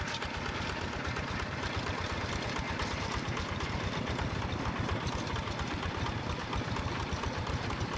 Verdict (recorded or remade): recorded